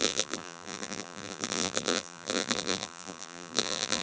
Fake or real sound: fake